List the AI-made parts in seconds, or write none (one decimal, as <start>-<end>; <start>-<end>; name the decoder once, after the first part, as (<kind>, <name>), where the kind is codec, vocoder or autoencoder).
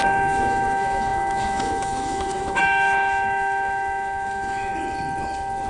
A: 0.0-4.7 (autoencoder, DAC-VAE)